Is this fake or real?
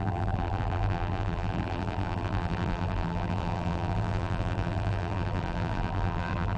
fake